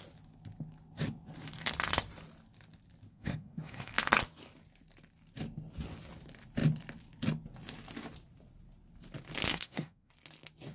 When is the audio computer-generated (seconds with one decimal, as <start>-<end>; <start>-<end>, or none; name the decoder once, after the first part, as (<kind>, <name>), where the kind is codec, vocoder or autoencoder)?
3.1-3.9 (codec, SNAC); 9.5-10.1